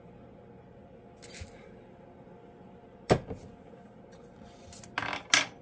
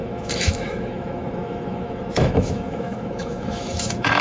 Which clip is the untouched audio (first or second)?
first